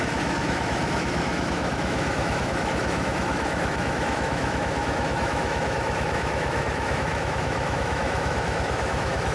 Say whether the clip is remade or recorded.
remade